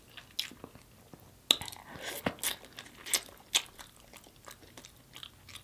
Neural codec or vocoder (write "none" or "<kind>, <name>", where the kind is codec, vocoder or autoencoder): none